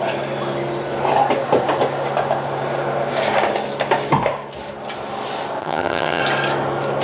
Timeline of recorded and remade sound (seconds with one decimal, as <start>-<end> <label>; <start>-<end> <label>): 0.0-5.6 recorded; 5.6-6.2 remade; 6.2-7.0 recorded